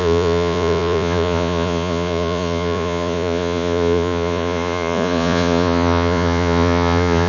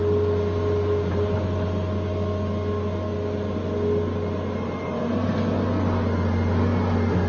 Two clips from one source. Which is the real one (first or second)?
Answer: second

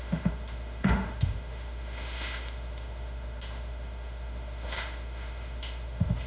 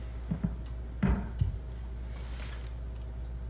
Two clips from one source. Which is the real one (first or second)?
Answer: second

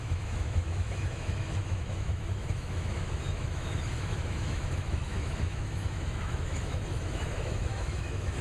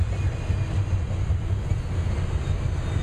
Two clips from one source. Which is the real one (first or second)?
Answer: second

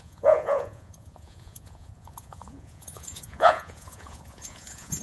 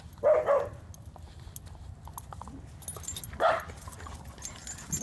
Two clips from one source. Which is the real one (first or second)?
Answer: second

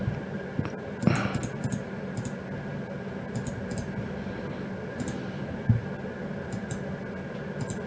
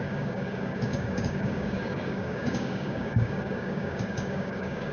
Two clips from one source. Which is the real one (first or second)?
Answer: first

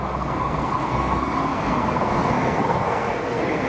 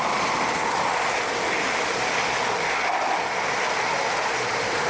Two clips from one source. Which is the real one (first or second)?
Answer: second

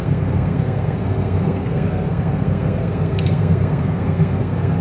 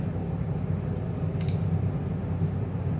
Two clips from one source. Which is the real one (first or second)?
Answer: second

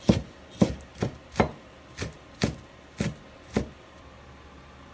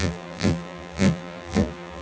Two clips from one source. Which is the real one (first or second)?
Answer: first